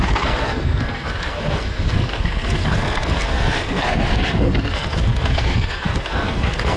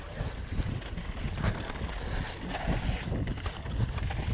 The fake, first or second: first